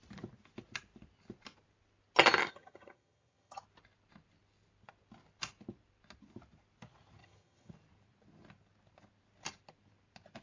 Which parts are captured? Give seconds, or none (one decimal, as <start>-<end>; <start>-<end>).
0.0-2.4; 3.6-7.2; 7.7-10.4